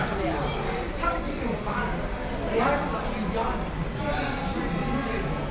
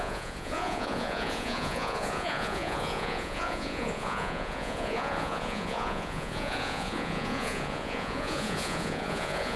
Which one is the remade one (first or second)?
second